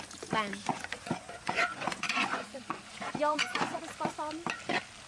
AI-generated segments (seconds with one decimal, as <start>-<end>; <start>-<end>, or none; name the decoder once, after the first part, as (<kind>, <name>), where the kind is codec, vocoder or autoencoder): 0.7-3.8 (vocoder, Vocos)